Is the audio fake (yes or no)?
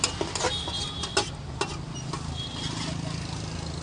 no